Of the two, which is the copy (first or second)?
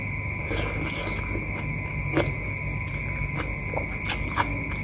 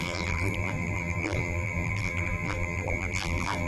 second